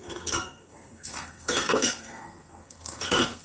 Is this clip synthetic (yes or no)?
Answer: yes